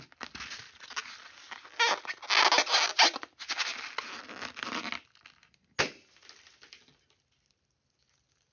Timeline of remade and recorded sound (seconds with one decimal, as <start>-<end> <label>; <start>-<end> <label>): 0.0-8.5 recorded

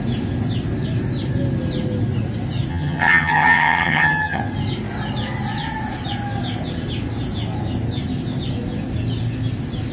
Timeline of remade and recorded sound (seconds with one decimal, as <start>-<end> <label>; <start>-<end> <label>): 0.0-2.7 recorded; 2.7-4.4 remade; 4.4-9.9 recorded

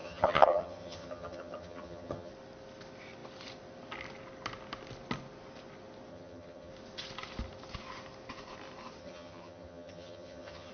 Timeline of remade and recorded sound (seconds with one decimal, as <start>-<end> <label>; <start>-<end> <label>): 0.0-2.3 remade; 2.3-6.1 recorded; 6.1-6.7 remade; 6.7-9.0 recorded; 9.0-10.7 remade

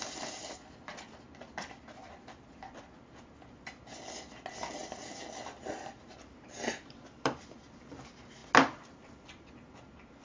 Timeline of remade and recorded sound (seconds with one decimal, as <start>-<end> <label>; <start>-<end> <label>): 0.0-10.2 recorded